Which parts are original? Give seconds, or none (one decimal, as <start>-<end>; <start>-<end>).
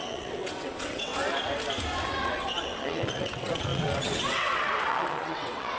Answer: 1.1-2.2